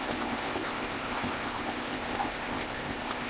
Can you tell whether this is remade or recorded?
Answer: remade